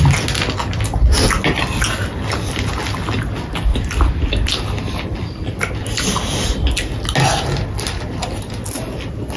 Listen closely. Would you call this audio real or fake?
real